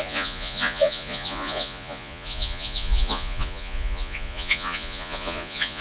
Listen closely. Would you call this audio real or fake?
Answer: fake